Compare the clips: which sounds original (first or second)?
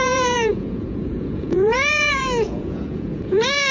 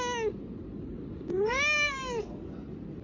second